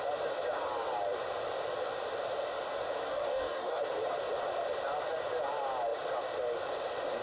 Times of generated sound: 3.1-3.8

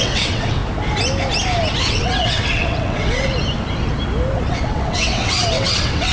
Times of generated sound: 0.0-0.6; 1.9-3.3; 4.5-6.1

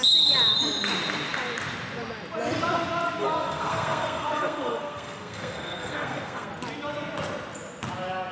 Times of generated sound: 3.2-6.5